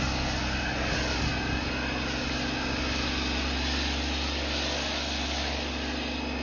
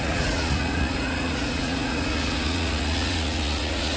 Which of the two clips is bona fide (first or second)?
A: first